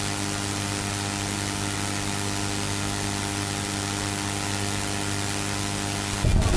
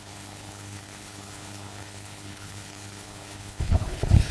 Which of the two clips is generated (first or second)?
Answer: second